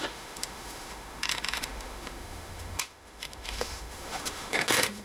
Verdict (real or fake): fake